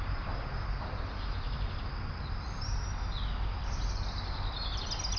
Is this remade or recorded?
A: recorded